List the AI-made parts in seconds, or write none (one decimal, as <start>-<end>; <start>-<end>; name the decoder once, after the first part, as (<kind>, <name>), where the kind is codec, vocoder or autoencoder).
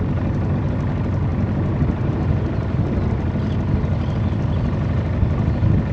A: none